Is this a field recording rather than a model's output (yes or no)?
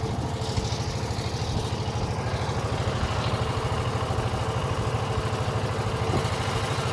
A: yes